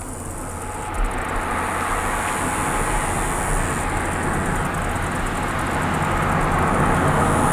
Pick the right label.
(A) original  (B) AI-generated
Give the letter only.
A